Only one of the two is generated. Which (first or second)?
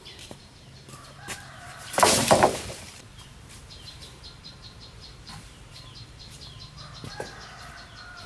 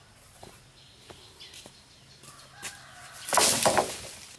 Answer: first